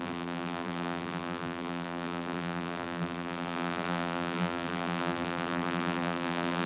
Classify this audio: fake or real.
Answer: fake